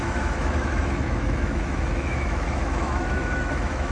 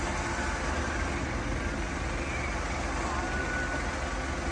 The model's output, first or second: first